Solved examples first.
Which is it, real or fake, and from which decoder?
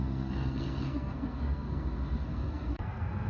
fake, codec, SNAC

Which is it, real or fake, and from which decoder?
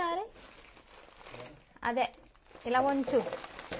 real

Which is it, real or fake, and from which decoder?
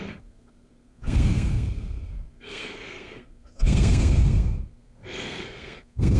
fake, codec, SNAC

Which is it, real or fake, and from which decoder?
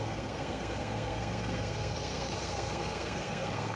fake, codec, SNAC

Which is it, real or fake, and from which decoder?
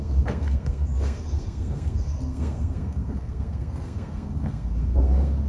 fake, codec, SNAC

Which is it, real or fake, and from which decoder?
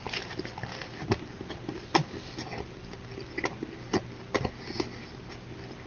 real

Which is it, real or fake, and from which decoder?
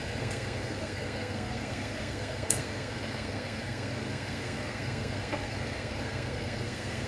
fake, codec, SNAC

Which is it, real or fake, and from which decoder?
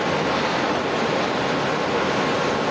real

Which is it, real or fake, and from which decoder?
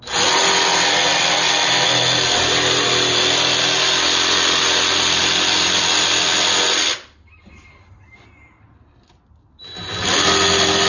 real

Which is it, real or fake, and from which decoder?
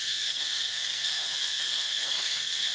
fake, codec, SNAC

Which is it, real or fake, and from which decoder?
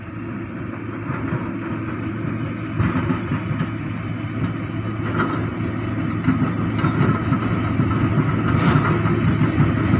real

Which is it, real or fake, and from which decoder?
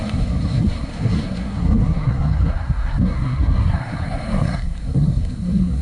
fake, codec, SNAC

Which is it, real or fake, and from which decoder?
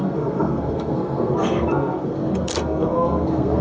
fake, codec, SNAC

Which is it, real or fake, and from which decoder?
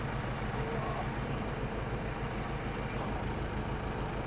real